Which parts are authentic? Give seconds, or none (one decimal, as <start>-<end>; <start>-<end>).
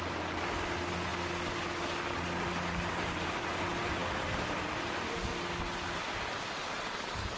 0.0-7.4